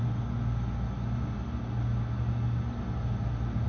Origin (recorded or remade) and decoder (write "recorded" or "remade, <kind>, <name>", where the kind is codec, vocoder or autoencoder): recorded